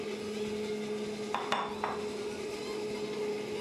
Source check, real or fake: real